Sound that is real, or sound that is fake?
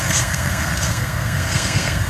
fake